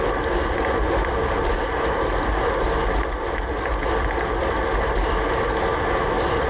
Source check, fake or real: real